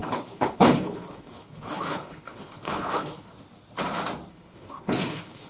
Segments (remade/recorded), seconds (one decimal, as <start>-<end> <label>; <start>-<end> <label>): 0.0-3.3 remade; 3.3-4.3 recorded; 4.3-5.5 remade